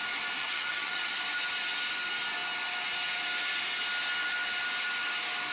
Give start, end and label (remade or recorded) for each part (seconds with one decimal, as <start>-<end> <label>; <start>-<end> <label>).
0.0-0.4 recorded; 0.4-1.1 remade; 1.1-5.5 recorded